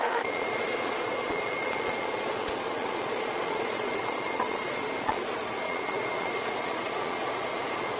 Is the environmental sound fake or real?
fake